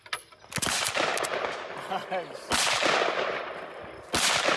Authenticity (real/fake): real